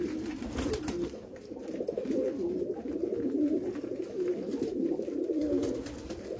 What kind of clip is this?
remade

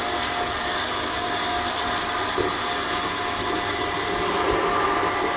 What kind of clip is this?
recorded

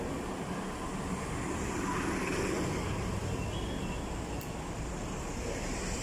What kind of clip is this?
recorded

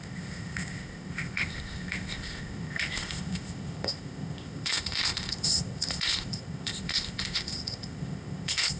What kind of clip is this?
remade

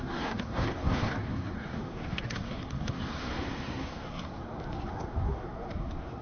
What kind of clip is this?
remade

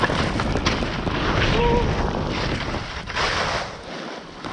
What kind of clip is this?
recorded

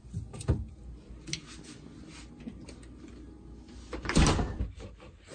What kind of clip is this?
recorded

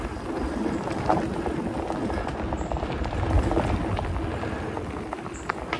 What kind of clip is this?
recorded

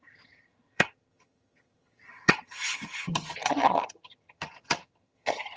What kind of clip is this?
remade